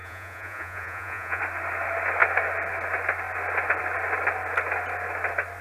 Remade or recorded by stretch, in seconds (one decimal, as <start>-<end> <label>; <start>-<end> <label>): 0.0-1.4 remade; 1.4-5.6 recorded